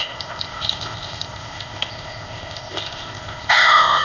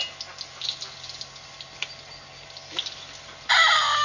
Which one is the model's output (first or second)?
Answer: first